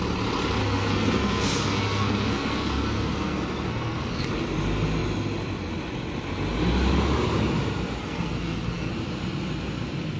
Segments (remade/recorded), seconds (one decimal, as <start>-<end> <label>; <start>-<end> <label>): 0.0-0.6 recorded; 0.6-4.3 remade; 4.3-8.0 recorded; 8.0-8.9 remade; 8.9-10.2 recorded